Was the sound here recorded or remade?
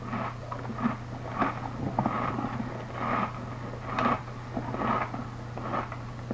recorded